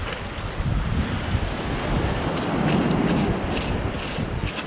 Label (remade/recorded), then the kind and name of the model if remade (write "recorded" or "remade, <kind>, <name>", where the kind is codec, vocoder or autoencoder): recorded